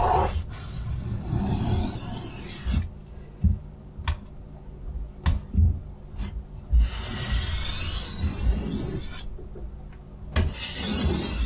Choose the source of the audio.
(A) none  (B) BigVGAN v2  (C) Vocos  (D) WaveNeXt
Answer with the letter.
A